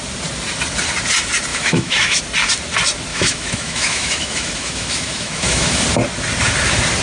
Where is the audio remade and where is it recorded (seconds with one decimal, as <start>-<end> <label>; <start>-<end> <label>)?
0.0-1.5 recorded; 1.5-2.2 remade; 2.2-3.1 recorded; 3.1-5.8 remade; 5.8-7.0 recorded